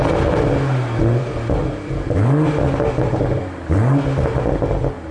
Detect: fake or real real